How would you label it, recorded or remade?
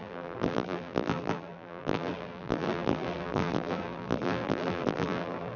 remade